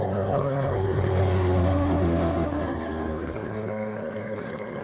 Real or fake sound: fake